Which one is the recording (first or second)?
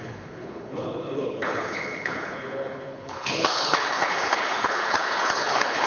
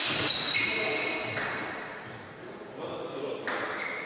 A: second